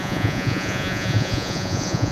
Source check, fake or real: fake